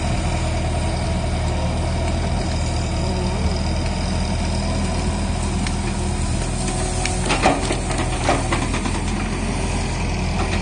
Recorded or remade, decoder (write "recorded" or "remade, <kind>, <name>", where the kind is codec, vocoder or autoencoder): recorded